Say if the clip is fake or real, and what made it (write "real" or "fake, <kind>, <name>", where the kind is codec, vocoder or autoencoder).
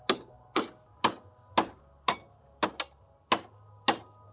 real